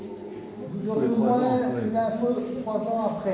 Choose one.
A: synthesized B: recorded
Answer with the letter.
B